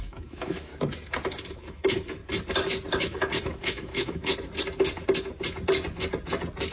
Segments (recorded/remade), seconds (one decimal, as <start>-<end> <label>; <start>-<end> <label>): 0.0-0.7 remade; 0.7-1.3 recorded; 1.3-2.2 remade; 2.2-3.0 recorded; 3.0-4.3 remade; 4.3-6.7 recorded